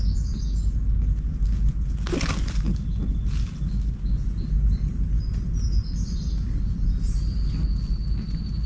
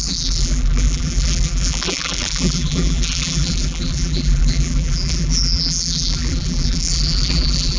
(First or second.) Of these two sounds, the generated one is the second